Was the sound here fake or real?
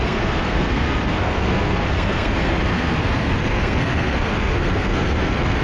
fake